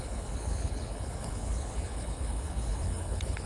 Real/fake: fake